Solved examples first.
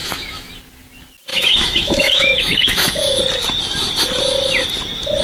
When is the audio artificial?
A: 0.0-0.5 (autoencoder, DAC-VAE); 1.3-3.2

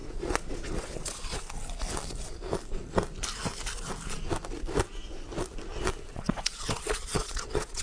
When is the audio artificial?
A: 0.0-1.4 (vocoder, Vocos); 6.1-7.8

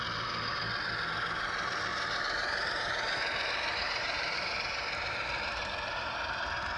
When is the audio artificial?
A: 1.9-5.7 (vocoder, BigVGAN v2)

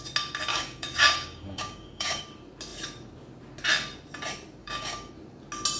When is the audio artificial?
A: 0.5-2.2 (codec, DAC); 4.6-5.1